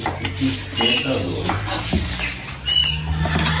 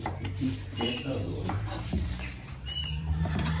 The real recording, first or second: first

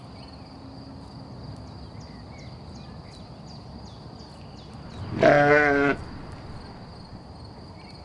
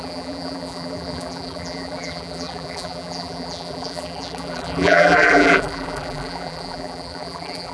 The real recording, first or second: first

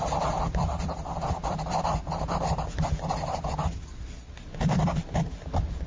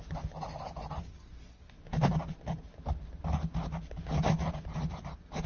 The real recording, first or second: second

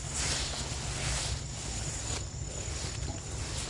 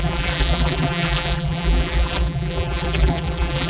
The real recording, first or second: first